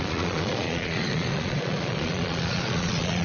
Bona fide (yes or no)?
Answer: no